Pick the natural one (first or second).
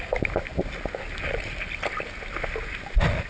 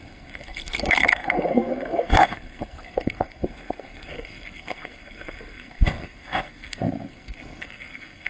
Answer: first